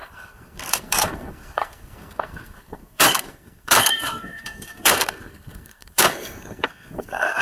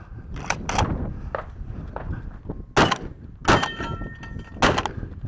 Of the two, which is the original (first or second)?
second